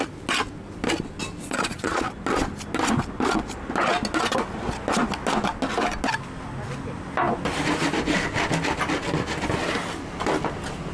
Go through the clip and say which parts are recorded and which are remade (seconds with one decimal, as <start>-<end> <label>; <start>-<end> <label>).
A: 0.0-1.4 recorded; 1.4-2.1 remade; 2.1-10.9 recorded